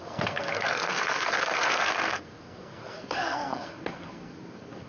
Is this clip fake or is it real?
fake